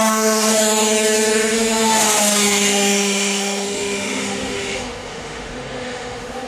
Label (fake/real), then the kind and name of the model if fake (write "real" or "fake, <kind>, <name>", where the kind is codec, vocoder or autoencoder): fake, autoencoder, DAC-VAE